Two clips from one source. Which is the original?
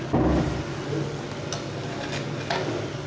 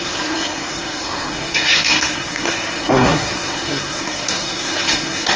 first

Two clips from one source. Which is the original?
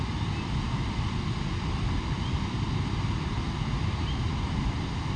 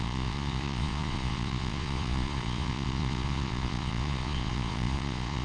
first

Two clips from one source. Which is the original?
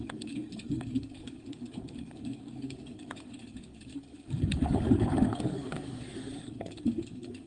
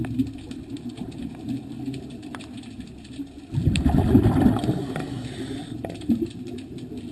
second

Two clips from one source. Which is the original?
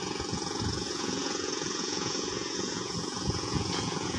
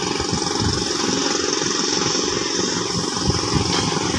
second